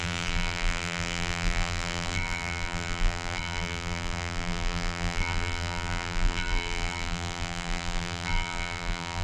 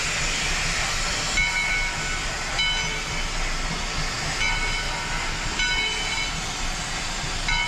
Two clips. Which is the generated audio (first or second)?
first